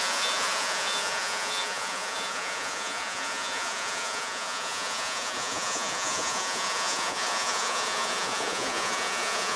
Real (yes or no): no